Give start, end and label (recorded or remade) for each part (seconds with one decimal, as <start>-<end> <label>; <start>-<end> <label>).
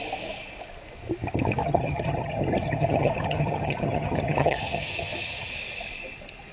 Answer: 0.0-1.6 recorded; 1.6-5.5 remade; 5.5-6.5 recorded